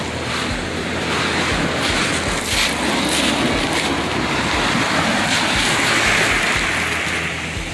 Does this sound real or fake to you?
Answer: real